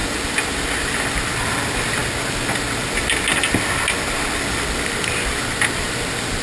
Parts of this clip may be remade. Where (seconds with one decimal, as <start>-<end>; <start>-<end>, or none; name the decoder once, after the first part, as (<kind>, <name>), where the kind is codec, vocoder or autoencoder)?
none